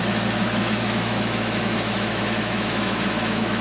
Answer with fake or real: fake